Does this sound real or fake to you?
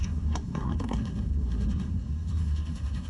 fake